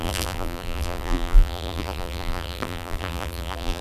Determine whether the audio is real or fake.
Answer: fake